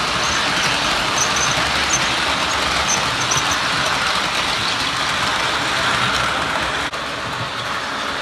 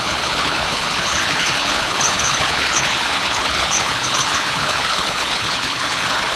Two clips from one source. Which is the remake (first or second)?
second